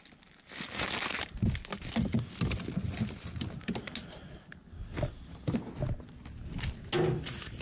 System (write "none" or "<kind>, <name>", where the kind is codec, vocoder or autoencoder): none